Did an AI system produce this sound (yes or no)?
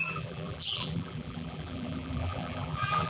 yes